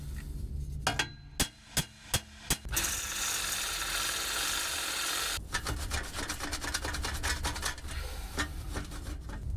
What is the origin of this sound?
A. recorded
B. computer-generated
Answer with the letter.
A